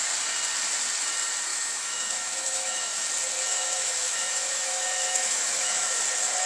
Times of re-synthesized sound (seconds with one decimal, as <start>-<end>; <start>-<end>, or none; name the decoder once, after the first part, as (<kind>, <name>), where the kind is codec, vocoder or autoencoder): 1.5-3.1 (autoencoder, DAC-VAE); 3.5-6.0